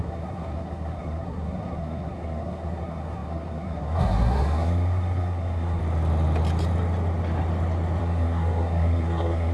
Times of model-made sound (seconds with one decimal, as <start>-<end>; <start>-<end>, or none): 0.0-5.8; 8.0-9.5